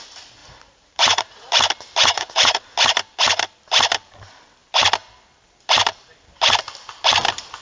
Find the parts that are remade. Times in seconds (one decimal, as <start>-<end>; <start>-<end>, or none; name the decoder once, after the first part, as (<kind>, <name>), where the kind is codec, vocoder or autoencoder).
0.4-1.5 (vocoder, Vocos); 2.0-2.6